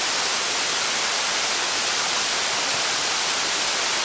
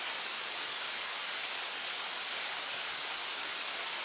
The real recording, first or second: first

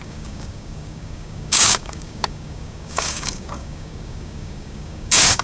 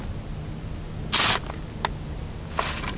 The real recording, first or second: second